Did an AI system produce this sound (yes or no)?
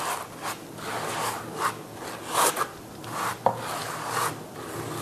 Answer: no